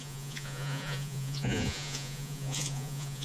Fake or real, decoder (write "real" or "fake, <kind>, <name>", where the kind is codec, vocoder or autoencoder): fake, vocoder, Vocos